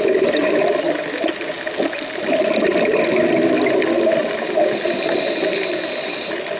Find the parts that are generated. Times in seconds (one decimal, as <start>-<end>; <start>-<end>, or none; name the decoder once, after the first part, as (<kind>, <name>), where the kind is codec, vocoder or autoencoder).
none